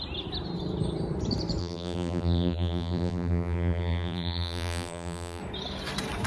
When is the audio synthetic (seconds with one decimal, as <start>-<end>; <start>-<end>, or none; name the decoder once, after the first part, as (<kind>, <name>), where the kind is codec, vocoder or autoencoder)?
1.6-5.4 (vocoder, BigVGAN v2)